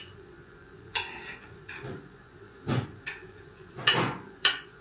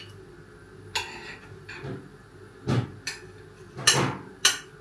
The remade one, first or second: first